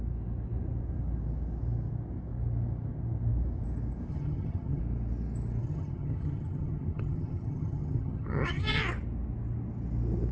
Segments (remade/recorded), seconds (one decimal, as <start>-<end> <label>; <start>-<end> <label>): 0.0-4.1 recorded; 4.1-4.8 remade; 4.8-5.6 recorded; 5.6-8.8 remade; 8.8-10.3 recorded